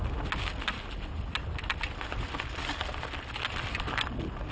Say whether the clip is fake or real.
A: real